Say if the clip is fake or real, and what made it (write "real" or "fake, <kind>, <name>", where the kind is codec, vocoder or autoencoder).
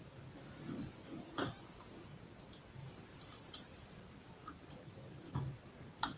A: real